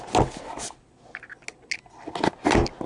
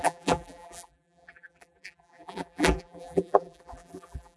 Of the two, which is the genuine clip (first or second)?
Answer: first